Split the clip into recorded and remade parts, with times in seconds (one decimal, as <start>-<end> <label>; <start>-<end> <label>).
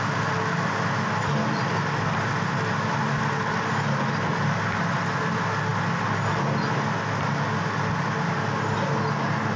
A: 0.0-9.6 recorded